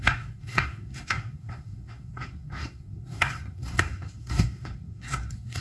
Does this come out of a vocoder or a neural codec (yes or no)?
yes